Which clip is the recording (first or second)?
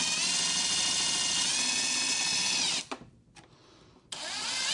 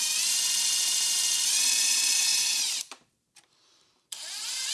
first